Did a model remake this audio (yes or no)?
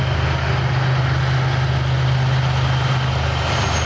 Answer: no